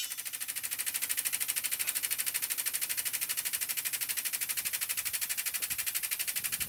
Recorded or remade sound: recorded